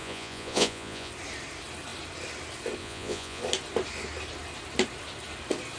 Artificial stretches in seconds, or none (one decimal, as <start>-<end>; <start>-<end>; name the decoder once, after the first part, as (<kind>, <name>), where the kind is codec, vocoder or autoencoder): 0.0-1.1 (vocoder, Vocos); 2.8-3.4